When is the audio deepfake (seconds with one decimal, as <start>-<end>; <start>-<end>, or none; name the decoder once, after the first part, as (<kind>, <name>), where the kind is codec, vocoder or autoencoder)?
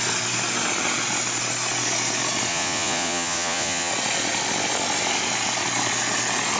2.5-3.9 (vocoder, Vocos)